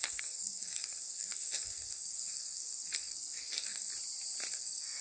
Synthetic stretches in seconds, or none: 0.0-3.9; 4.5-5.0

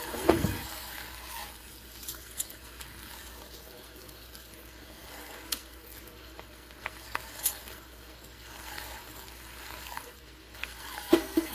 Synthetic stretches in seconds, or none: 0.0-11.5

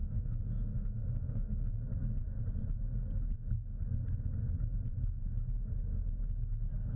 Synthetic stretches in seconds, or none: 0.0-1.7